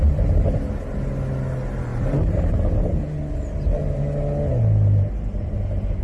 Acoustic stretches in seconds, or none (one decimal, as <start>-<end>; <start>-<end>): 0.0-1.9; 4.0-6.0